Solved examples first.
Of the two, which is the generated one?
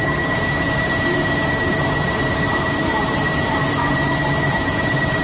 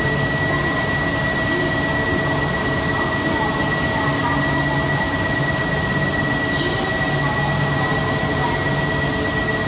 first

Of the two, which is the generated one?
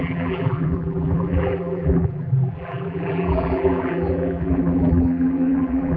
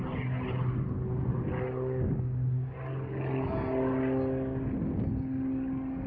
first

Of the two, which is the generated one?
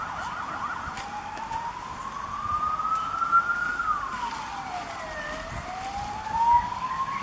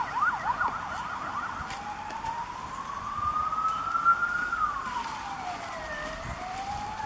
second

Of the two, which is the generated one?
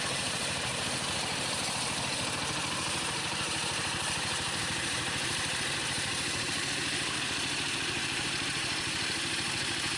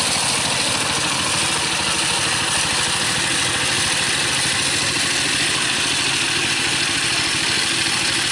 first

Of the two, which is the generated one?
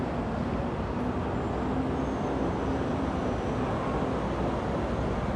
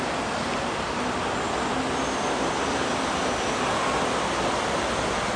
second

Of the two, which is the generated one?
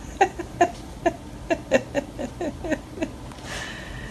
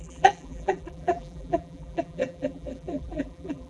second